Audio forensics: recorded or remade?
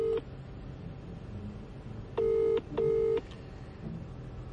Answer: recorded